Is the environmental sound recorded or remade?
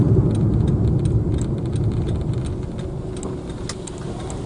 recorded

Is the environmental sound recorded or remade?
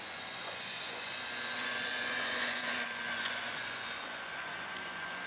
remade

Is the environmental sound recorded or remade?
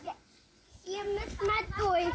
remade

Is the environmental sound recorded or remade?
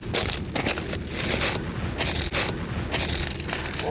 recorded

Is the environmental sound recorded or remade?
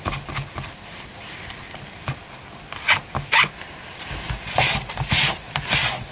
recorded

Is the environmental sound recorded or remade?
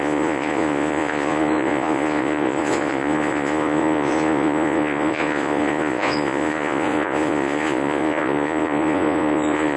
remade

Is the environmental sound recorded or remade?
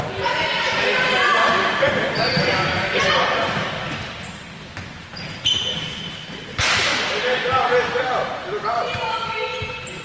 recorded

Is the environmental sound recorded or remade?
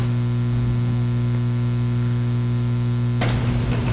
recorded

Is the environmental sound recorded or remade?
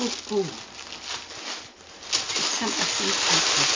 recorded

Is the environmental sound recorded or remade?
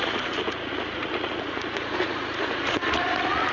remade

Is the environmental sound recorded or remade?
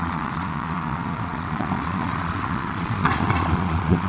remade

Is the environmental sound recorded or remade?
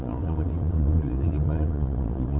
remade